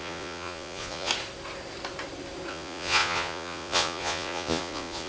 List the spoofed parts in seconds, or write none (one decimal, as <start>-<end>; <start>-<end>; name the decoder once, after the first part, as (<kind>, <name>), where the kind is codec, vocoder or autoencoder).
0.0-1.1 (vocoder, Vocos); 2.5-5.1